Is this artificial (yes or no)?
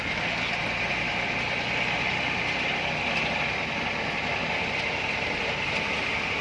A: no